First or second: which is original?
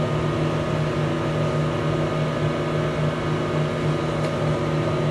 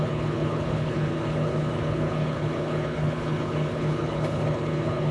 first